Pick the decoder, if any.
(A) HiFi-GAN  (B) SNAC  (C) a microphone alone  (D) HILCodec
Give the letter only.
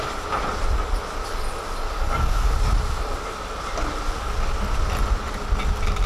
C